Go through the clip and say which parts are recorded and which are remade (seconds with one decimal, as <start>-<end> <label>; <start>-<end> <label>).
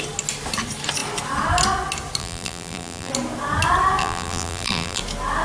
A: 0.0-2.2 recorded; 2.2-3.1 remade; 3.1-4.0 recorded; 4.0-5.0 remade; 5.0-5.4 recorded